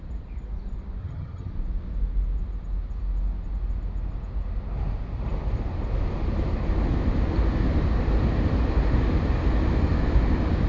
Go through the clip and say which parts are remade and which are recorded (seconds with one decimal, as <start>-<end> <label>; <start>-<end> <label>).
0.0-1.0 recorded; 1.0-1.5 remade; 1.5-10.7 recorded